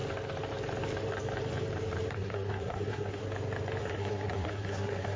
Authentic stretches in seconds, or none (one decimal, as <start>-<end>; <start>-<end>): 0.0-2.1; 3.2-3.8